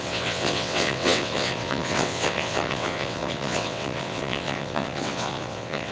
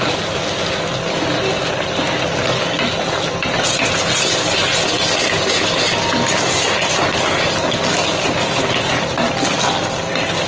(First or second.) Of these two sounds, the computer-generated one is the first